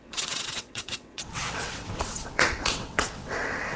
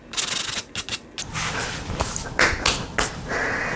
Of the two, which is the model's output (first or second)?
first